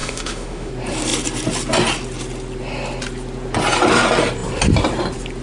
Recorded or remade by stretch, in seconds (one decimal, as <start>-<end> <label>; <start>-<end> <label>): 0.0-0.7 remade; 0.7-5.4 recorded